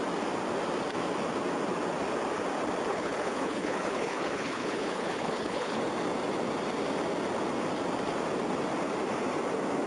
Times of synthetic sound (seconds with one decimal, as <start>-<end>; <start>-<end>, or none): 2.9-5.8